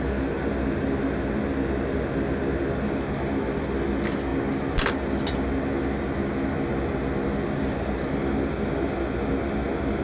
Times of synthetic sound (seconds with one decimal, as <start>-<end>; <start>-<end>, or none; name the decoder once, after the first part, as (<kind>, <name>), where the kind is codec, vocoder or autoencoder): none